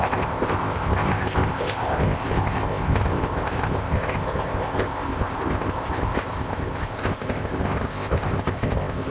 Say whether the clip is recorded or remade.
remade